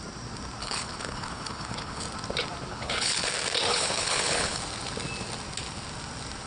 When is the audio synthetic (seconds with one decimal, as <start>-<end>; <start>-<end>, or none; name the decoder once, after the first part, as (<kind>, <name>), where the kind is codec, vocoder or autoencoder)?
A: 0.6-2.0 (codec, HILCodec); 2.7-3.3; 3.7-4.6